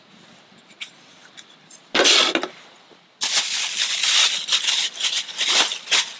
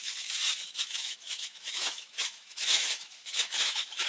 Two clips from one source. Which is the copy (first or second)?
second